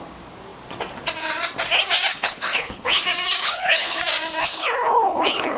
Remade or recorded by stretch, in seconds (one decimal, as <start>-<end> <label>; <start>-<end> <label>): 0.0-2.1 recorded; 2.1-3.0 remade; 3.0-3.4 recorded; 3.4-4.0 remade; 4.0-4.4 recorded; 4.4-5.6 remade